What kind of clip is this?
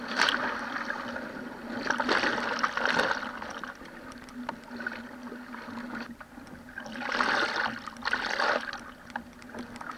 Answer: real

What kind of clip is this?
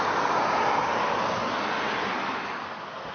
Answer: real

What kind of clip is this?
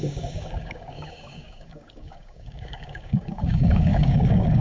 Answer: fake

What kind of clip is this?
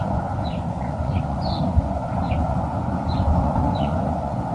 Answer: fake